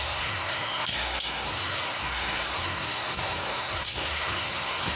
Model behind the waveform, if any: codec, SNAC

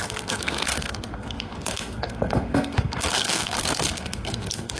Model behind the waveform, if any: codec, SNAC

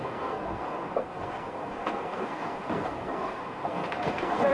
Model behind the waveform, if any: codec, SNAC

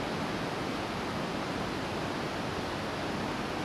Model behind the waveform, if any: none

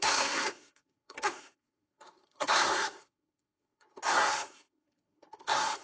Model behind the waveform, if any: codec, SNAC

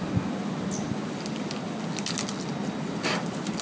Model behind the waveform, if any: none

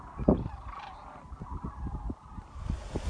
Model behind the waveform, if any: none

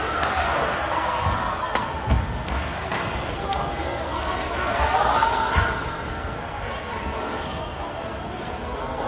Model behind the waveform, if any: codec, SNAC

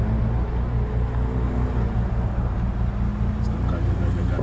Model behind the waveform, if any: none